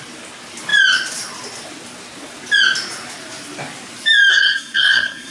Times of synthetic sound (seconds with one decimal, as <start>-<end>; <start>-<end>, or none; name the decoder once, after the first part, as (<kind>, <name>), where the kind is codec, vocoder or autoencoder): 4.3-5.3 (codec, SNAC)